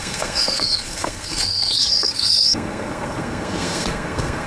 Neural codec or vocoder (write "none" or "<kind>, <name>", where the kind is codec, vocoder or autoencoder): codec, SNAC